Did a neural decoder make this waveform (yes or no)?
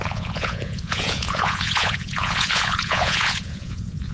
yes